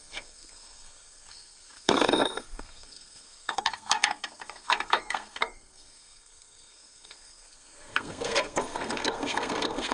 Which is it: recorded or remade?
remade